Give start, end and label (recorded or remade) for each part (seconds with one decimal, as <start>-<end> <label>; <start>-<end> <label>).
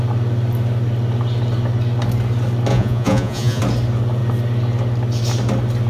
0.0-2.7 recorded; 2.7-3.6 remade; 3.6-5.9 recorded